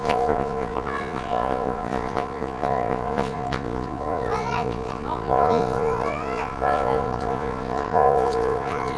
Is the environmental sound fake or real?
fake